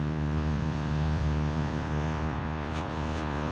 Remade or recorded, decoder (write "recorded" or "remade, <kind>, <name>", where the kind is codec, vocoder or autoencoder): remade, vocoder, Vocos